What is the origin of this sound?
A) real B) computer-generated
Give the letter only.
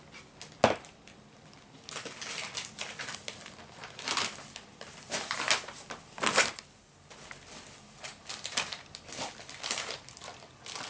A